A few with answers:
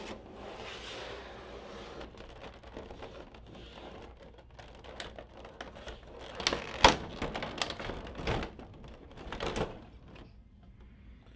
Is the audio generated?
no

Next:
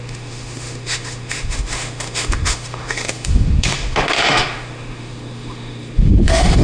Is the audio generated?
yes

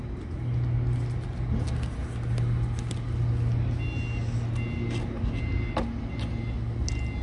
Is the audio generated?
no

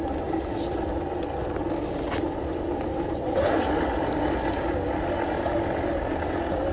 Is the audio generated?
no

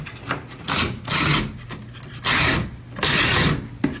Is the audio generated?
no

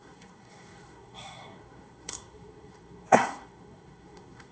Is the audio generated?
yes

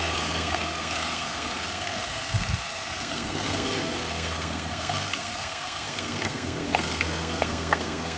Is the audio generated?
yes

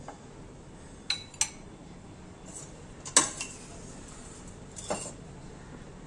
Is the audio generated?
no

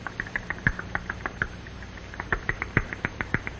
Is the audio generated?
yes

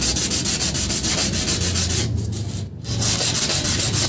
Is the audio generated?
no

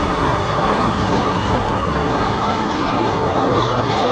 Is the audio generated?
yes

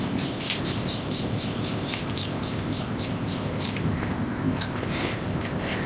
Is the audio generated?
yes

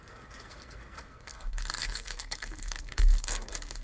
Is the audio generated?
yes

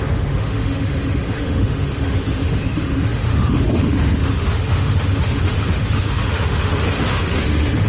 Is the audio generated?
yes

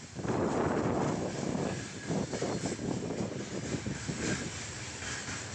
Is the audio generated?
no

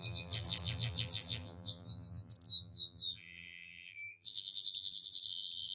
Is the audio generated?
yes